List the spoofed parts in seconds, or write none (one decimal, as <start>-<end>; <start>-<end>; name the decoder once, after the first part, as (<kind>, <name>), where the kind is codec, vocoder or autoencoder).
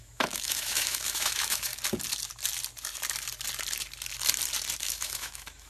0.0-1.7 (autoencoder, DAC-VAE); 4.8-5.7